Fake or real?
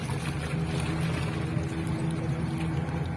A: real